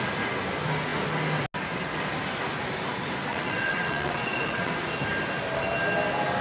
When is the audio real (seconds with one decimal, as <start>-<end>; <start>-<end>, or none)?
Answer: 0.0-3.3; 4.7-6.4